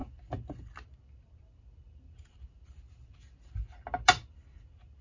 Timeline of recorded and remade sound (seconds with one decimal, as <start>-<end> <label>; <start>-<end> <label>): 0.0-5.0 recorded